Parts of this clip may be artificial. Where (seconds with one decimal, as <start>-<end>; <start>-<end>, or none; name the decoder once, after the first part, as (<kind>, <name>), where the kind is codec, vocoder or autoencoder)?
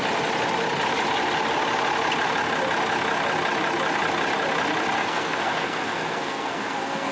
5.0-7.1 (codec, SNAC)